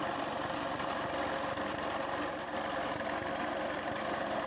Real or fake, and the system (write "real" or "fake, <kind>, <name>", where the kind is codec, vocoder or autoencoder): fake, vocoder, BigVGAN v2